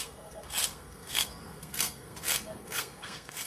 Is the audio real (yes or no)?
no